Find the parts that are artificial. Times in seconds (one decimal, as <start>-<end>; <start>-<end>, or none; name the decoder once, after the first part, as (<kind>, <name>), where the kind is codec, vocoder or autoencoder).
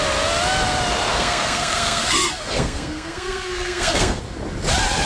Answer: 1.1-4.2 (codec, SNAC)